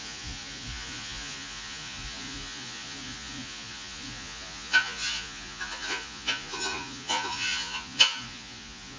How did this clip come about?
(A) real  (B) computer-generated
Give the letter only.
B